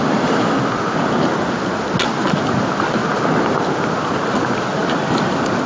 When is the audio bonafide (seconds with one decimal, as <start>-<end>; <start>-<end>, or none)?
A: 0.0-5.7